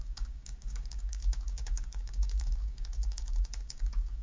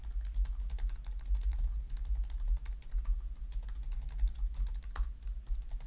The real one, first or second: second